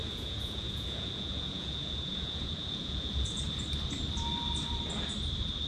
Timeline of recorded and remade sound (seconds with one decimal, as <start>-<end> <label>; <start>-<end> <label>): 0.0-3.4 remade; 3.4-5.7 recorded